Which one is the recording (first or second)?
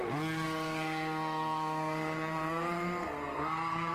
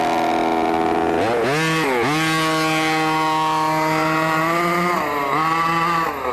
second